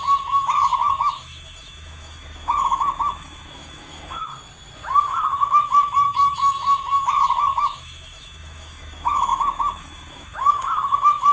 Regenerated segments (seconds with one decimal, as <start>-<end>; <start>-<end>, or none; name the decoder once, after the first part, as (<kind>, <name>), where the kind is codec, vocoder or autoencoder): 0.0-4.3 (autoencoder, DAC-VAE); 5.1-11.3